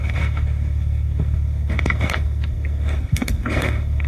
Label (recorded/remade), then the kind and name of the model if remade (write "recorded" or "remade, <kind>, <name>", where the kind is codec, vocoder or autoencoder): remade, codec, SNAC